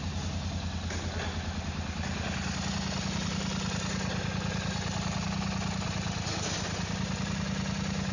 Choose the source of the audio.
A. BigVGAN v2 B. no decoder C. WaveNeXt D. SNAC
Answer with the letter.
B